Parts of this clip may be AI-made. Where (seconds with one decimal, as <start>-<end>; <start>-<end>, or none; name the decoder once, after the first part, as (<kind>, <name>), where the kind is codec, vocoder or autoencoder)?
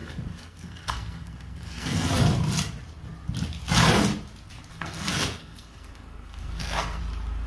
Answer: 0.0-2.1 (codec, SNAC); 4.7-7.0